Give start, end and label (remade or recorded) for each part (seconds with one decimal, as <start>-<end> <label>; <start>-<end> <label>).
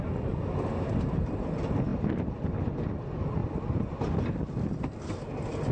0.0-5.7 recorded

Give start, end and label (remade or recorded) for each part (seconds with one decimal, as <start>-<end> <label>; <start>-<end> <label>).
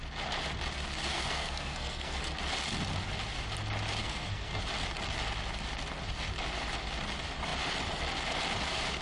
0.0-1.1 recorded; 1.1-2.2 remade; 2.2-4.0 recorded; 4.0-4.6 remade; 4.6-9.0 recorded